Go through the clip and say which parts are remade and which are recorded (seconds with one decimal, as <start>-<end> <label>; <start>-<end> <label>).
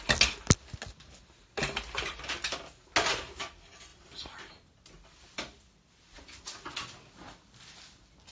0.0-8.3 recorded